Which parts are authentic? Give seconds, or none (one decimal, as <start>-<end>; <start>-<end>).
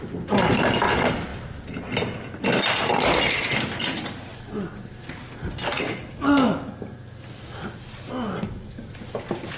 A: 0.0-9.6